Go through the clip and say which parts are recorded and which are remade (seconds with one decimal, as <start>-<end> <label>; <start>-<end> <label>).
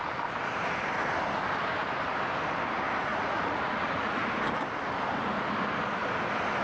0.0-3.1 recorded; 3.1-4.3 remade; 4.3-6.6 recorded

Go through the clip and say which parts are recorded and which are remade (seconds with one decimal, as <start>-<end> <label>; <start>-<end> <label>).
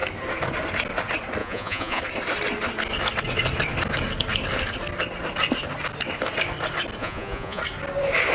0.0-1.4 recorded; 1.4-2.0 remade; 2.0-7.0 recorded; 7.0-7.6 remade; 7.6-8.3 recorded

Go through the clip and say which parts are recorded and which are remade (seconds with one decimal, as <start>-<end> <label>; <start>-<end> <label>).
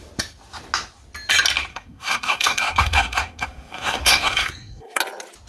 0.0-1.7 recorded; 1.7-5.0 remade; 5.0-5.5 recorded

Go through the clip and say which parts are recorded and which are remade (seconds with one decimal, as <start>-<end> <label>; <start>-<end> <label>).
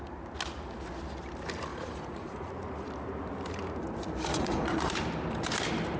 0.0-1.7 recorded; 1.7-2.5 remade; 2.5-4.3 recorded; 4.3-4.9 remade; 4.9-6.0 recorded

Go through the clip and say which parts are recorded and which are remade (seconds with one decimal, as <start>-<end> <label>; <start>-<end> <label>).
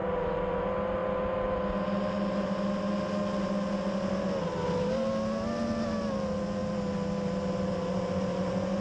0.0-8.8 recorded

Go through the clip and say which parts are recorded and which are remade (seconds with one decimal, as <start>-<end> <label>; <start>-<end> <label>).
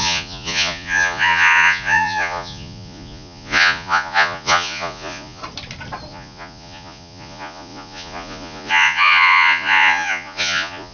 0.0-5.4 remade; 5.4-6.1 recorded; 6.1-10.9 remade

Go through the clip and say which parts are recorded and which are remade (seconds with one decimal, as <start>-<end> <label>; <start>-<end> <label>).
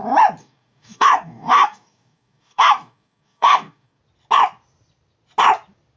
0.0-0.4 recorded; 0.4-4.0 remade; 4.0-6.0 recorded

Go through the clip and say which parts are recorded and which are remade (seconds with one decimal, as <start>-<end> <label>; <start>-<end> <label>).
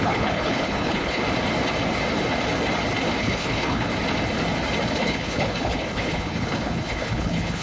0.0-1.2 remade; 1.2-3.2 recorded; 3.2-3.9 remade; 3.9-5.0 recorded; 5.0-7.6 remade